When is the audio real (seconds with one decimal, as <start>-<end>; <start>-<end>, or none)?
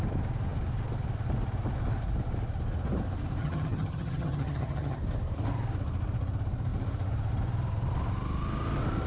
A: 0.0-3.4; 5.0-9.1